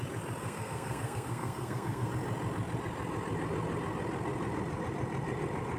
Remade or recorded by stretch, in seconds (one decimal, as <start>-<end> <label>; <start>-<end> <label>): 0.0-0.4 recorded; 0.4-2.1 remade; 2.1-5.8 recorded